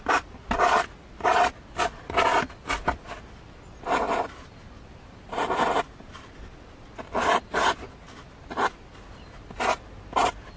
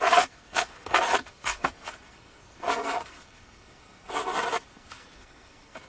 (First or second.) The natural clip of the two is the first